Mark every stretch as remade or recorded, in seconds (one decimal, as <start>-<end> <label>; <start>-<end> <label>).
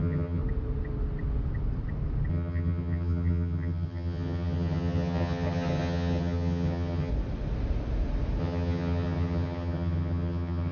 0.0-0.4 remade; 0.4-2.3 recorded; 2.3-7.1 remade; 7.1-8.4 recorded; 8.4-10.7 remade